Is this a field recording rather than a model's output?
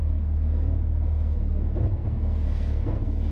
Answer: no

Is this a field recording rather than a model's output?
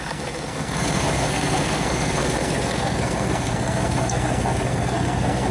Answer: no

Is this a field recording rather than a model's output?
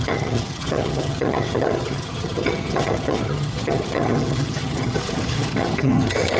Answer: no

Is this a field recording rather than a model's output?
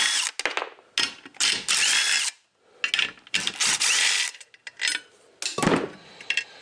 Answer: yes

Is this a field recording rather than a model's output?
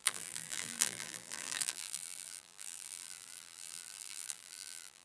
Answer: no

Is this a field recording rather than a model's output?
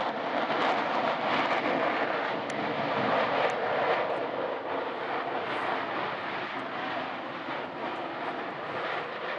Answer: yes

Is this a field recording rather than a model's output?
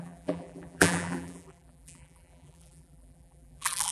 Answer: no